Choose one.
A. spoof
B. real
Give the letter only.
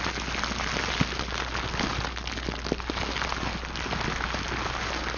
B